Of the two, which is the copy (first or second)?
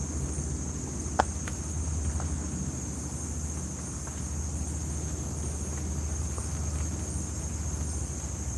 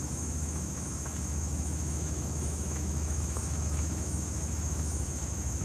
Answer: second